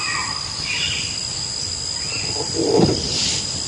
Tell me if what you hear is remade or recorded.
recorded